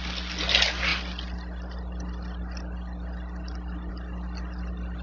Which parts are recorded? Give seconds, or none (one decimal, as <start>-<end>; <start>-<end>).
0.0-5.0